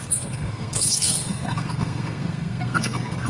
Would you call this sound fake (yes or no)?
yes